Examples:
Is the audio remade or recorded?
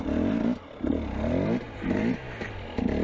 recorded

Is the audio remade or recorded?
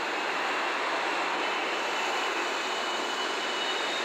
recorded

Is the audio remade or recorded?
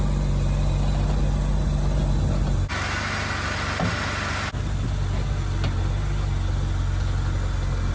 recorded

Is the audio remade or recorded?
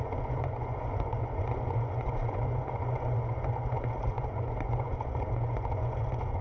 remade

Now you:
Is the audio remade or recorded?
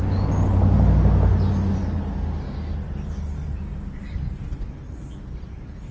recorded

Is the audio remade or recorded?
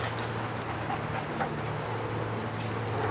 recorded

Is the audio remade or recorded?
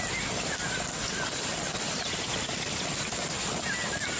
recorded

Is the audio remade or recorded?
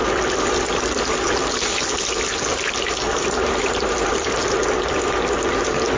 recorded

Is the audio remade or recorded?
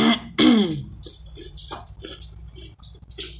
recorded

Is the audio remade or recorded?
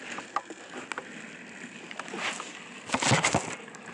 recorded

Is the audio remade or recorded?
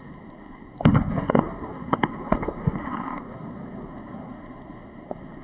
remade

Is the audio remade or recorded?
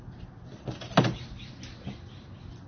recorded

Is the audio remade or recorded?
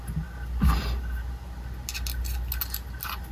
recorded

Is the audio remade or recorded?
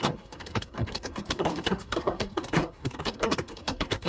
remade